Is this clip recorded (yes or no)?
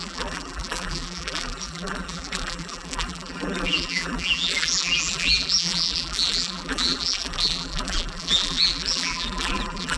no